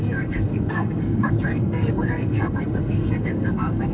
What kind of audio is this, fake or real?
fake